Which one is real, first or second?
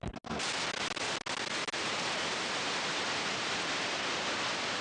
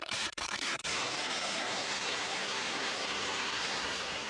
first